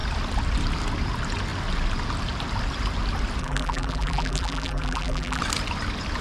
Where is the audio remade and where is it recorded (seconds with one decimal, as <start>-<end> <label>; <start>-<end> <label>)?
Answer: 0.0-3.4 recorded; 3.4-5.4 remade; 5.4-6.2 recorded